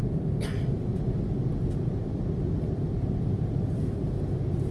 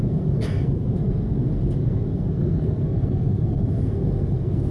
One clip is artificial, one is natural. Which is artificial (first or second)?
second